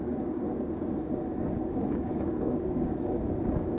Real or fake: fake